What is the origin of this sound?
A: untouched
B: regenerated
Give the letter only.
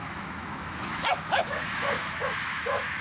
B